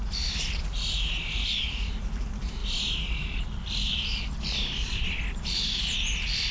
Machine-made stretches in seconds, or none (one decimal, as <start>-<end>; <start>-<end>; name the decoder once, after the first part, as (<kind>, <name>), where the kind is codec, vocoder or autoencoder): none